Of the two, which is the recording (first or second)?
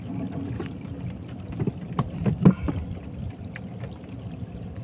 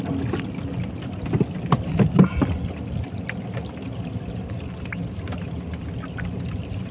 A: second